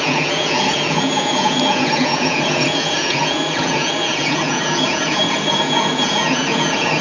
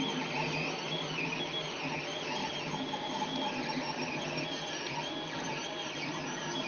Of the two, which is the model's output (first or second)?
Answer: first